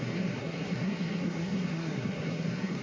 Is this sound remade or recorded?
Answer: remade